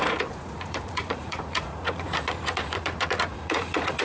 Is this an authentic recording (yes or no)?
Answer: no